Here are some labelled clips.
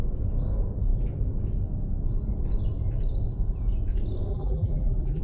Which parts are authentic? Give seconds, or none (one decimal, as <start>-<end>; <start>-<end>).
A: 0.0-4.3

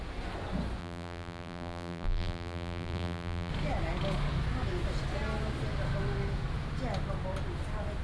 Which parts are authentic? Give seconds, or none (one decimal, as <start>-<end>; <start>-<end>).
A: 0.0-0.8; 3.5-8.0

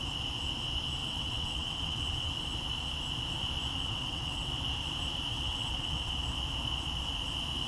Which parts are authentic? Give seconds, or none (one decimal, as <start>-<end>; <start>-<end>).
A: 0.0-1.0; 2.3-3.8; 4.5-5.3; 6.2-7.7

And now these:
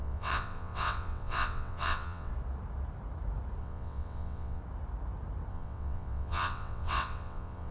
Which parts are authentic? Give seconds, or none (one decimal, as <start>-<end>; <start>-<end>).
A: 2.3-3.6; 4.6-5.5